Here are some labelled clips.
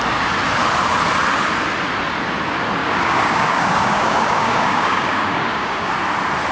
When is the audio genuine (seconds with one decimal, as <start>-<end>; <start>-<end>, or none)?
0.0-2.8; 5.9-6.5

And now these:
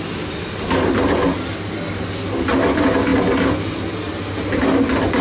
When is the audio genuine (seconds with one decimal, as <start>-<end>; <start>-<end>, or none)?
0.0-5.2

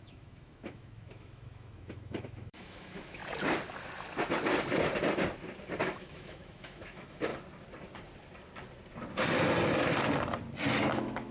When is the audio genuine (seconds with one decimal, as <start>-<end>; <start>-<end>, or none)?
3.2-5.8; 7.3-10.9

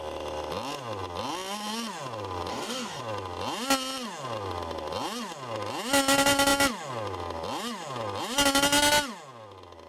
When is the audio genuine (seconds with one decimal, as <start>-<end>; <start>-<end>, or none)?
0.0-2.5; 3.0-9.9